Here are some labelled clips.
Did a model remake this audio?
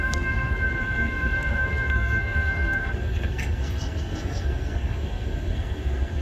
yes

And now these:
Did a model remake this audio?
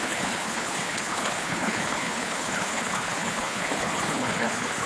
yes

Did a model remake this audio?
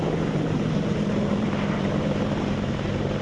yes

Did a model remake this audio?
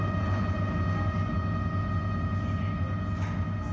no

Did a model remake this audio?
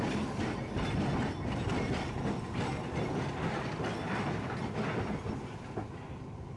no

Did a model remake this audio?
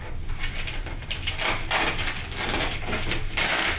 no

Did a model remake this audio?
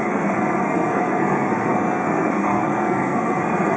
yes